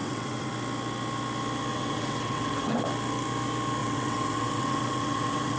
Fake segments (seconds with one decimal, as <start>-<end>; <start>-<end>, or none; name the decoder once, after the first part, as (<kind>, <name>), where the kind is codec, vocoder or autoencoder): 0.0-0.5 (vocoder, WaveNeXt); 1.7-2.8; 3.8-5.6